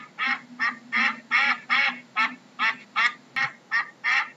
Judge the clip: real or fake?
real